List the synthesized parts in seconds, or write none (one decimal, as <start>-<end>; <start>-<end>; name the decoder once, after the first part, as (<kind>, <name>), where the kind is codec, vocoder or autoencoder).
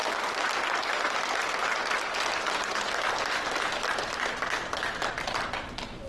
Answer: none